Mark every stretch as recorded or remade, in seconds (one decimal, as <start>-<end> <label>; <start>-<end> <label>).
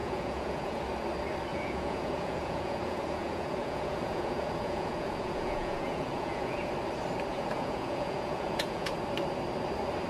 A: 0.0-0.8 remade; 0.8-1.5 recorded; 1.5-6.7 remade; 6.7-7.3 recorded; 7.3-8.9 remade; 8.9-10.1 recorded